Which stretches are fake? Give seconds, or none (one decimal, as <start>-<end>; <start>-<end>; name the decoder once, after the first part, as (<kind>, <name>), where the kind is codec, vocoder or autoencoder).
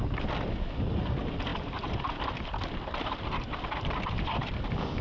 1.5-4.5 (vocoder, BigVGAN v2)